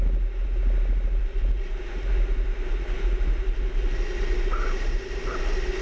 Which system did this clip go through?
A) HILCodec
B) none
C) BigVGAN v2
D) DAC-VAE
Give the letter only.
B